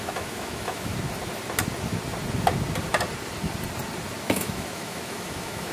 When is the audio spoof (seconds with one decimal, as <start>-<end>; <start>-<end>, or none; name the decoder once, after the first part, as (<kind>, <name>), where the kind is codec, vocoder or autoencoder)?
0.0-0.9 (autoencoder, DAC-VAE); 4.3-5.7